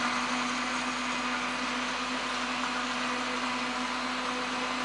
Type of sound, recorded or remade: recorded